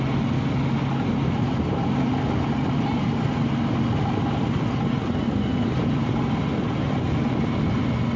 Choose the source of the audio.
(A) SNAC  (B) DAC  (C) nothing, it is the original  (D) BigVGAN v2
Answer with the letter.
C